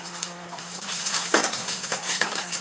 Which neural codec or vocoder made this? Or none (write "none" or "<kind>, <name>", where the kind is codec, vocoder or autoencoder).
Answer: codec, SNAC